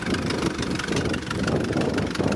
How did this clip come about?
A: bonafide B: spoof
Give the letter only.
A